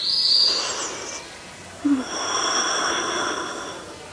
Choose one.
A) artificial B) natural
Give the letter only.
B